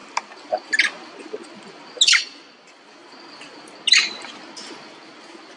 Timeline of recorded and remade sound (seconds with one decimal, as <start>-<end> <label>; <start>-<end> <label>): 0.0-5.6 recorded